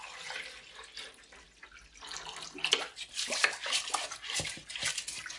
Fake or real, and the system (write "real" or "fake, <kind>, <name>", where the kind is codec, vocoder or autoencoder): real